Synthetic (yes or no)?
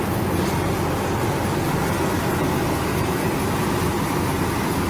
no